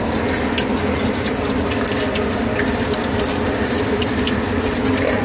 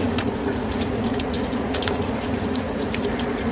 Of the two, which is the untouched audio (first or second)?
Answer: first